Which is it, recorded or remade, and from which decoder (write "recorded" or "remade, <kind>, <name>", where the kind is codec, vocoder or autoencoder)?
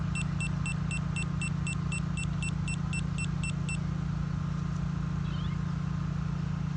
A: recorded